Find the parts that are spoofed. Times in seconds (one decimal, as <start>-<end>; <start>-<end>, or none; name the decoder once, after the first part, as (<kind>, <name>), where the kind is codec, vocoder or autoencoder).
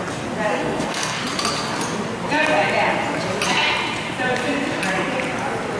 0.5-1.2 (codec, SNAC)